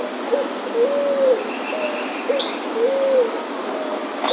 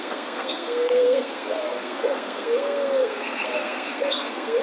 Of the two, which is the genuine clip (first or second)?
first